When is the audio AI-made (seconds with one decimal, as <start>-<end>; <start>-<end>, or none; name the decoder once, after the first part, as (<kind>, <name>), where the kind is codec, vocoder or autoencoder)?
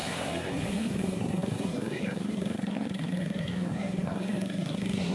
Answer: 0.0-5.1 (codec, SNAC)